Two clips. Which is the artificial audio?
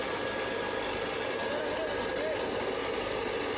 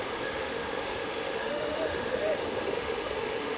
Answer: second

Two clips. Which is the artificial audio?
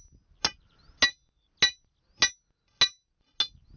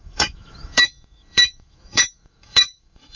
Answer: second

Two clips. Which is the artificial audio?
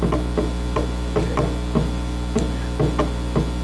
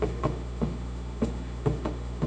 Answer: second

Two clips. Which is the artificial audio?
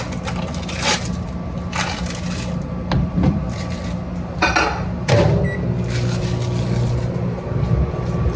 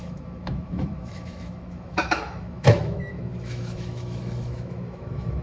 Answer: second